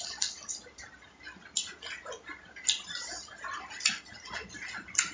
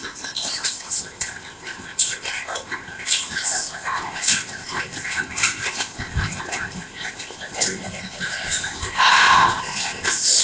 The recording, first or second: first